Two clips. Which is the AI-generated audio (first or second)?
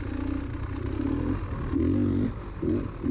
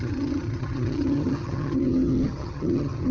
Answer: second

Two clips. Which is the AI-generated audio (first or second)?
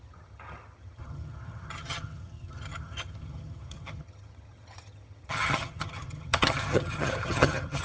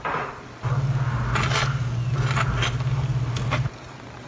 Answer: first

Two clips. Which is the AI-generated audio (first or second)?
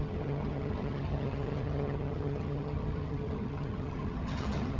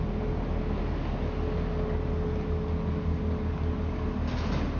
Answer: first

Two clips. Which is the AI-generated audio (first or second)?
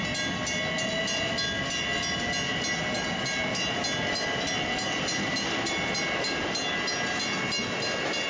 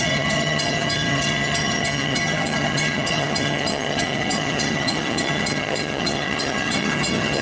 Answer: second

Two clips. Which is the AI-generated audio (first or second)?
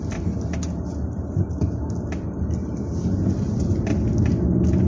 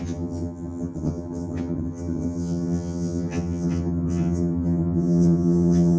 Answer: second